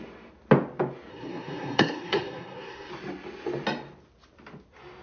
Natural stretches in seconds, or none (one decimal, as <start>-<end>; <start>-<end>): 0.0-1.1; 2.9-5.0